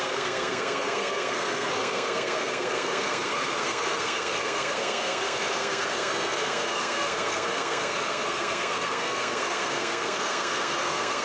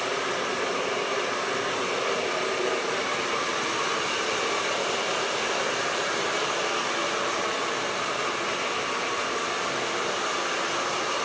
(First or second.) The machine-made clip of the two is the first